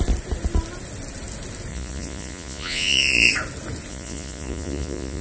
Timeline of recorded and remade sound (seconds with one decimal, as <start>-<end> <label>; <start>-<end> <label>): 0.0-1.7 recorded; 1.7-3.3 remade; 3.3-3.9 recorded; 3.9-5.2 remade